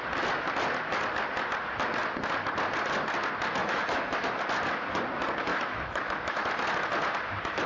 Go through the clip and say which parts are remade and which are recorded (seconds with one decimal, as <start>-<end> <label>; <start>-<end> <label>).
0.0-3.6 recorded; 3.6-4.4 remade; 4.4-5.5 recorded; 5.5-6.5 remade; 6.5-7.7 recorded